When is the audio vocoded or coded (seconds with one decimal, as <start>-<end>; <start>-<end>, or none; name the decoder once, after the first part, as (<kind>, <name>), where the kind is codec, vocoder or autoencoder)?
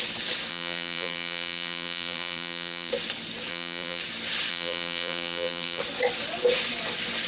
0.5-2.9 (vocoder, BigVGAN v2); 3.5-4.0; 4.5-5.8